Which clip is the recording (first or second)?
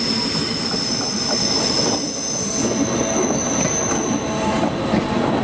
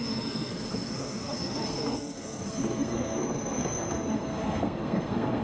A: first